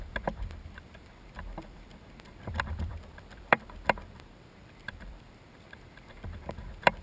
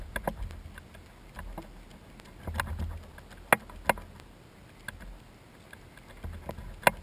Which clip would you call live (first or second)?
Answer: second